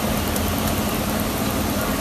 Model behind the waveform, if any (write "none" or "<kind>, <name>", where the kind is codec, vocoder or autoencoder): vocoder, BigVGAN v2